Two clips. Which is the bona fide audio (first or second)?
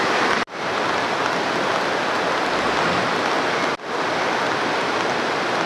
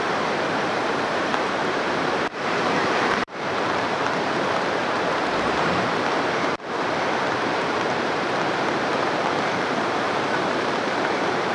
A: first